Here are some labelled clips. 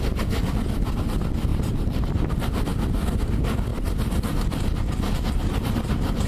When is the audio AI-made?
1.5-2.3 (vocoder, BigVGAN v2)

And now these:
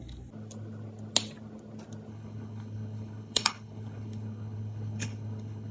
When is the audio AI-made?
2.1-5.7 (codec, HILCodec)

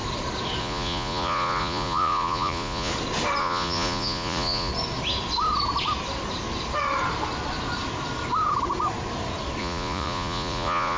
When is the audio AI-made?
0.6-2.9 (vocoder, Vocos); 3.4-4.7; 9.6-11.0